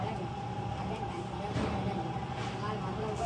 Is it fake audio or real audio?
real